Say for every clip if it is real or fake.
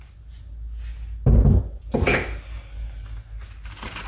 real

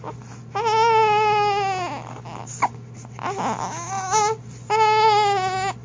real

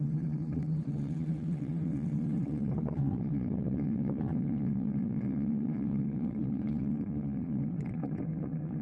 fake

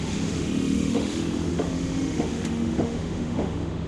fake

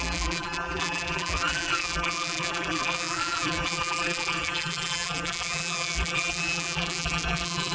fake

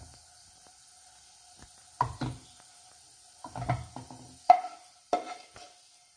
real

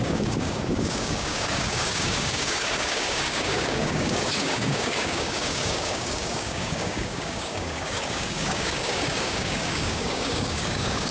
fake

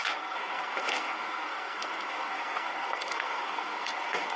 fake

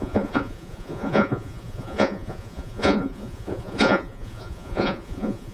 fake